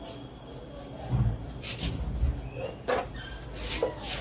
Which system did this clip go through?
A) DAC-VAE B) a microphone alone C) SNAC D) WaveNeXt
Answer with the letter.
B